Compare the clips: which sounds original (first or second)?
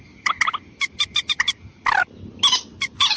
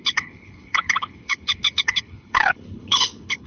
first